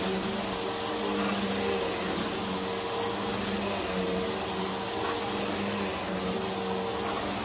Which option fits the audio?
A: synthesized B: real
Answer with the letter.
B